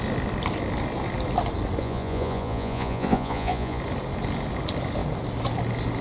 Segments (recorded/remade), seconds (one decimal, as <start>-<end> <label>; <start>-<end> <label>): 0.0-1.8 recorded; 1.8-3.8 remade; 3.8-6.0 recorded